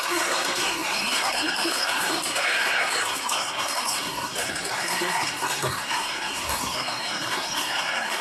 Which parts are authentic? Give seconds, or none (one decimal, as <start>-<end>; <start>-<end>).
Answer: none